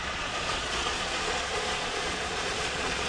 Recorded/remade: remade